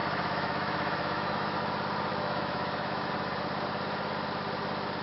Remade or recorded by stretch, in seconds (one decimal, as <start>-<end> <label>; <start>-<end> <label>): 0.0-1.6 remade; 1.6-2.1 recorded; 2.1-3.1 remade; 3.1-5.0 recorded